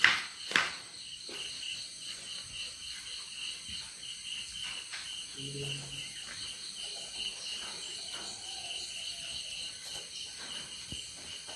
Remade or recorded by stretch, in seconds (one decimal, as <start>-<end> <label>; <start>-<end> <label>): 0.0-1.9 recorded; 1.9-2.6 remade; 2.6-11.6 recorded